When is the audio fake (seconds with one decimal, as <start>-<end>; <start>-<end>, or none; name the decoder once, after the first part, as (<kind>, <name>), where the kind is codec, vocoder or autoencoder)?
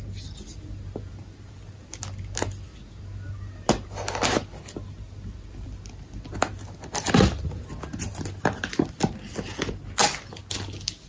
none